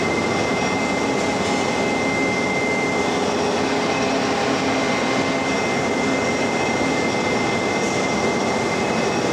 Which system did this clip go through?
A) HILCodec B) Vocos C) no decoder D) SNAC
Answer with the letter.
C